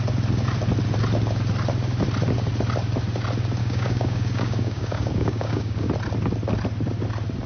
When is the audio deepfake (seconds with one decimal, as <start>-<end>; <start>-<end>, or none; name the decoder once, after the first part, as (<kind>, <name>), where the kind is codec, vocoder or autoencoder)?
3.6-5.9 (codec, DAC)

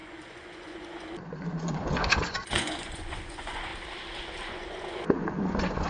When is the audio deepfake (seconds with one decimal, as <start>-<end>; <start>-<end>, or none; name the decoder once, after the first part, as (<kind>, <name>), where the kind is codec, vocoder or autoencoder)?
0.0-3.7 (vocoder, Vocos); 4.3-5.9